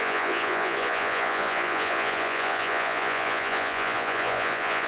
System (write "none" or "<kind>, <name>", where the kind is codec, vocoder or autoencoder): vocoder, Vocos